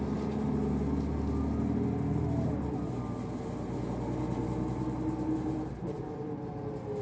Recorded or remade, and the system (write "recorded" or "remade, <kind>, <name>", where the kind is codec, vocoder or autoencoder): recorded